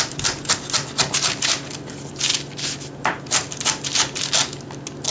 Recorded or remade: recorded